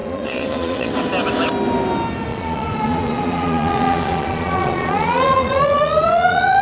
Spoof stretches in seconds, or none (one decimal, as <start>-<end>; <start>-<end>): 0.0-0.9; 2.3-6.6